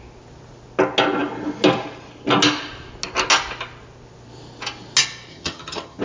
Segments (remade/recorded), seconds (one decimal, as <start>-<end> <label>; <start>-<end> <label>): 0.0-5.3 recorded; 5.3-6.0 remade